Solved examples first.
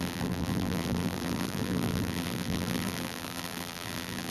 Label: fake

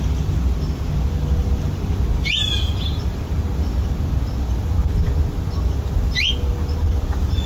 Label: real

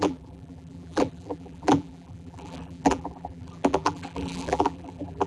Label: fake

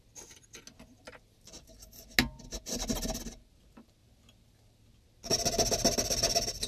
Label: real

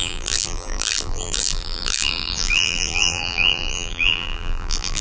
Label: fake